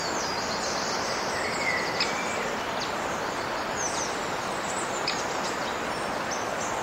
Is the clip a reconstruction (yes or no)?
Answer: no